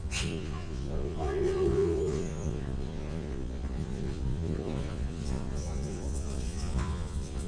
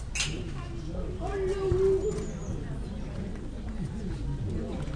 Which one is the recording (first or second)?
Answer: second